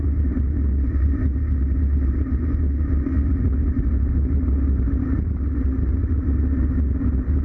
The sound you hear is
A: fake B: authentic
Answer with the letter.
B